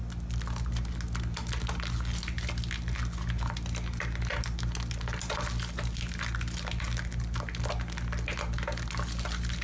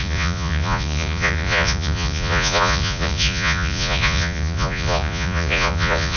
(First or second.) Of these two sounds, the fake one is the second